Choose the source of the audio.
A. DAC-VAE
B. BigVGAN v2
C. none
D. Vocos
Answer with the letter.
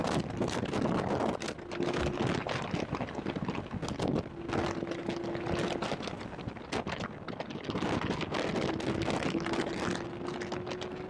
C